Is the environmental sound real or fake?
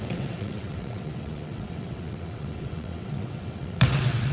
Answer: fake